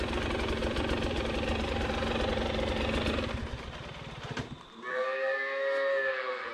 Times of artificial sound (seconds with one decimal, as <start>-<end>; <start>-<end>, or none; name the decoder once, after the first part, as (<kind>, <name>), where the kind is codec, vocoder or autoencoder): 4.9-6.5 (codec, SNAC)